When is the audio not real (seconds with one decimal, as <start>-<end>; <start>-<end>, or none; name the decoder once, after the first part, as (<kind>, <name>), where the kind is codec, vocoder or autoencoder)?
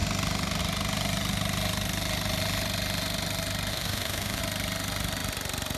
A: 3.7-4.4 (autoencoder, DAC-VAE)